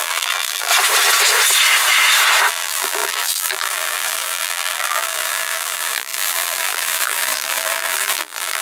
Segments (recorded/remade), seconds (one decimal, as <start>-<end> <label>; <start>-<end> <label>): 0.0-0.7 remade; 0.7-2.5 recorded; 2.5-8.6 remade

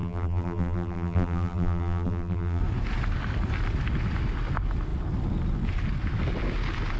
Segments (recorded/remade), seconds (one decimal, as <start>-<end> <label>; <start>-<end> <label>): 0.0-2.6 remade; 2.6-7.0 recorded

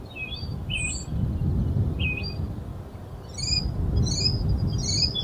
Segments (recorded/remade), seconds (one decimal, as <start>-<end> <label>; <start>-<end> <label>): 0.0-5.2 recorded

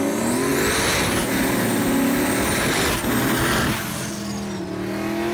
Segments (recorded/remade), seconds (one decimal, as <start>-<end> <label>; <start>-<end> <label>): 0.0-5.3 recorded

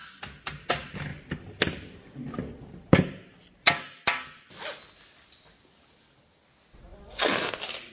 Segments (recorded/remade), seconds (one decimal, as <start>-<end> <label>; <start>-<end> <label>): 0.0-6.9 recorded; 6.9-7.9 remade